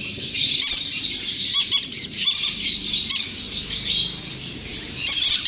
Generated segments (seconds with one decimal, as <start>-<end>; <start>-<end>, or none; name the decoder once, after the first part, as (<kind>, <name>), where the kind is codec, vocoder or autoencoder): 0.0-5.5 (vocoder, BigVGAN v2)